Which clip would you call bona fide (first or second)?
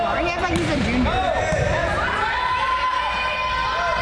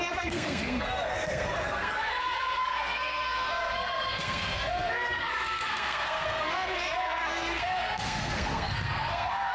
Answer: first